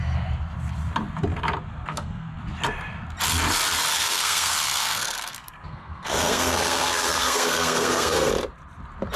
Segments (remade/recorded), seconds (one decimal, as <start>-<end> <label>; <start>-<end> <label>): 0.0-1.7 recorded; 1.7-2.4 remade; 2.4-3.9 recorded; 3.9-8.3 remade; 8.3-9.2 recorded